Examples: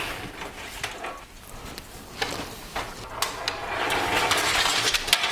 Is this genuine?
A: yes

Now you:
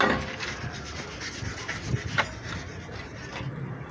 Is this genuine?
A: yes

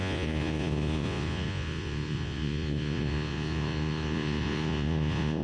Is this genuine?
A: no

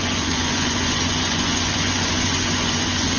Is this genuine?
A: no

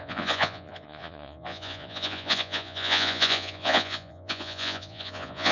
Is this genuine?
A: no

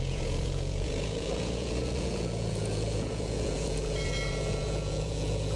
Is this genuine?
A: no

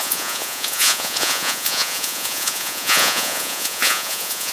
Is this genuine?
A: no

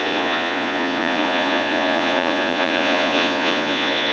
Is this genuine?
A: no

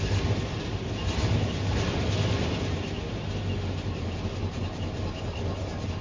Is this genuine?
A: yes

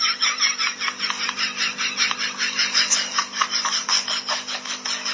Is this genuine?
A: yes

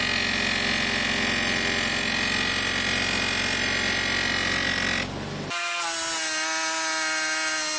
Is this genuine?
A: yes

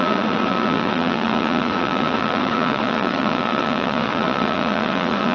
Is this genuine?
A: no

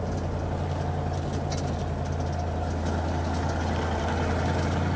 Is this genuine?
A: yes